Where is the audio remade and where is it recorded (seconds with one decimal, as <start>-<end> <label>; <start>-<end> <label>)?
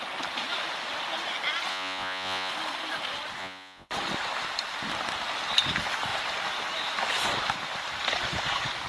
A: 0.0-1.7 recorded; 1.7-2.5 remade; 2.5-3.4 recorded; 3.4-3.9 remade; 3.9-8.9 recorded